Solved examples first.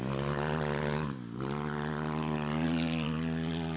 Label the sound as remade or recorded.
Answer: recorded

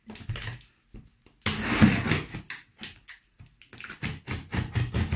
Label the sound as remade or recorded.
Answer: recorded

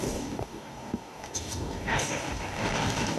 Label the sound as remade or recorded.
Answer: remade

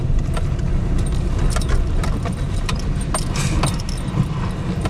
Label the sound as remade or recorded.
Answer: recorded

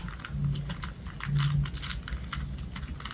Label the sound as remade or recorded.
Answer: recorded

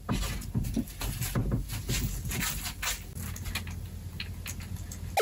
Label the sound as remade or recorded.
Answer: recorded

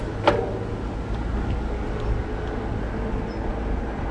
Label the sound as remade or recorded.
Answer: recorded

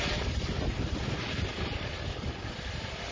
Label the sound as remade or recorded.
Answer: recorded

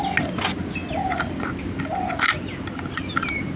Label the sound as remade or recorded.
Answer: recorded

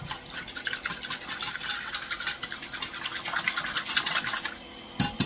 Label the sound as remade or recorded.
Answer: recorded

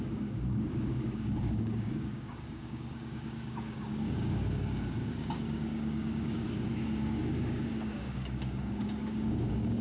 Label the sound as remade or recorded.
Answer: remade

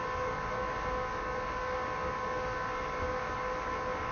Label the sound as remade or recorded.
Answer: remade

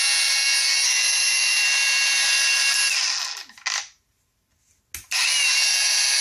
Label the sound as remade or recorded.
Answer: recorded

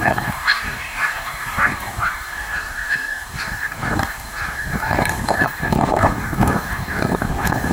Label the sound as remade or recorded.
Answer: remade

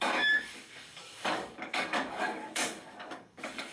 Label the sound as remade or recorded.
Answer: remade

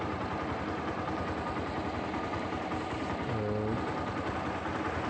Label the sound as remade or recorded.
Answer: recorded